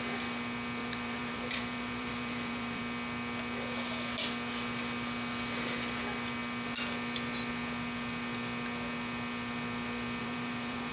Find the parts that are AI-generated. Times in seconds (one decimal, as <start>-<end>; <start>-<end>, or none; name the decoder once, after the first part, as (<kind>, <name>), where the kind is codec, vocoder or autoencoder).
0.8-2.8 (vocoder, BigVGAN v2); 10.2-10.9